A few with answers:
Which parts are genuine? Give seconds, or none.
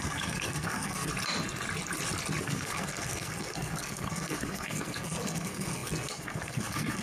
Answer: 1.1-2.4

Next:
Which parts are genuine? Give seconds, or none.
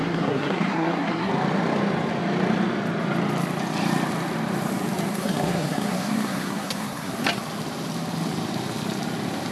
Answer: 1.3-5.1; 7.1-9.5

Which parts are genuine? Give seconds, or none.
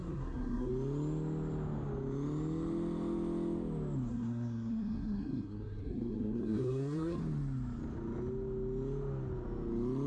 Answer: 0.7-4.1; 7.2-10.1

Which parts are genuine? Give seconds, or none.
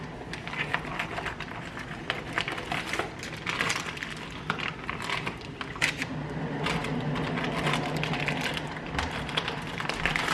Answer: 0.0-10.3